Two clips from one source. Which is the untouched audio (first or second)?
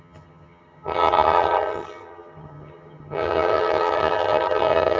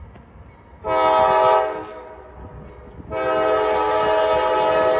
second